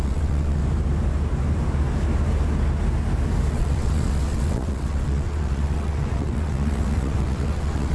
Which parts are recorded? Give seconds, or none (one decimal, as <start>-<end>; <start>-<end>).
0.6-3.5